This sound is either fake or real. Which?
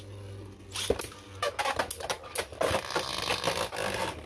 real